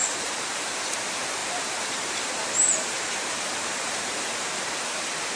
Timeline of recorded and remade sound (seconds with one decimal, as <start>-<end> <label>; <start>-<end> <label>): 0.0-0.8 remade; 0.8-1.4 recorded; 1.4-4.6 remade; 4.6-5.4 recorded